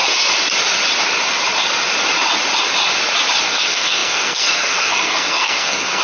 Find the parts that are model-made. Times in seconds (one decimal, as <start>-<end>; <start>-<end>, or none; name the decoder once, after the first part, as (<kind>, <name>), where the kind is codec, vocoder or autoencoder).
3.4-6.0 (codec, SNAC)

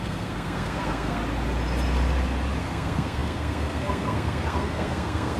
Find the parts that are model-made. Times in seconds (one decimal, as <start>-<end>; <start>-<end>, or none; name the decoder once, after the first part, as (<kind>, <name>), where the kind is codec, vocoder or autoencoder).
0.0-1.2 (codec, SNAC); 2.6-5.4

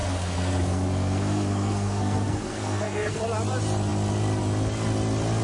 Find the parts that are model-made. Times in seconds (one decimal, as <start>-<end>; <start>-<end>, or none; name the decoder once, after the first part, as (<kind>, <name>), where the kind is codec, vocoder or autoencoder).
0.0-3.2 (codec, SNAC)

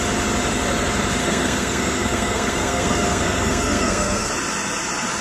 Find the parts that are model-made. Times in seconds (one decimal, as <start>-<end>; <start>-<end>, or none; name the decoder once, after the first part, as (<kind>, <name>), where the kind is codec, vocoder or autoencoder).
1.2-4.3 (codec, SNAC)